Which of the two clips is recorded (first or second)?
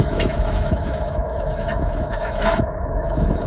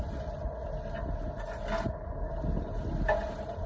second